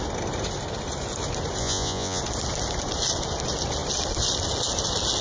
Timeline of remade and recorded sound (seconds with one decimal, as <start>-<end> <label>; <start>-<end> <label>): 0.0-1.6 recorded; 1.6-2.2 remade; 2.2-5.2 recorded

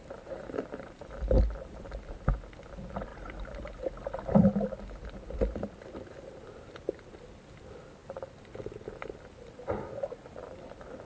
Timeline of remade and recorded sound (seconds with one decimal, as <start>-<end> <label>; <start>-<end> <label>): 0.0-11.0 recorded

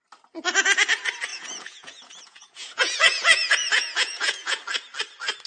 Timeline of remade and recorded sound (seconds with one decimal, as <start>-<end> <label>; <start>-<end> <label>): 0.0-1.3 recorded; 1.3-4.6 remade; 4.6-5.5 recorded

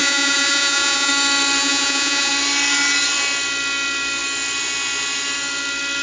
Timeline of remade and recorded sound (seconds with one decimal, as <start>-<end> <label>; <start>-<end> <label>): 0.0-1.1 remade; 1.1-1.6 recorded; 1.6-2.3 remade; 2.3-6.0 recorded

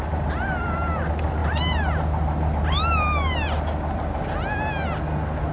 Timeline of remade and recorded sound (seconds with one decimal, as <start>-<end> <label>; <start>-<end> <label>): 0.0-5.5 recorded

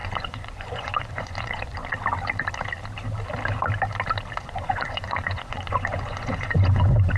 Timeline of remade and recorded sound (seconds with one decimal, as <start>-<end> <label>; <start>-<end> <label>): 0.0-1.8 remade; 1.8-4.4 recorded; 4.4-7.2 remade

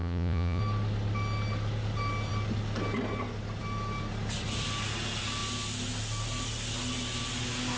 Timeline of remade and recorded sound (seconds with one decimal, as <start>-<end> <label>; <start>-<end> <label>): 0.0-0.6 remade; 0.6-7.8 recorded